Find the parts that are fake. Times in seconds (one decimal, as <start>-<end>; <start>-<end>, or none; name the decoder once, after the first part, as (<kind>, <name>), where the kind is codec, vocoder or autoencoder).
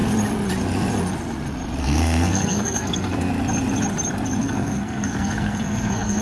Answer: 1.8-3.3 (codec, SNAC); 4.4-6.2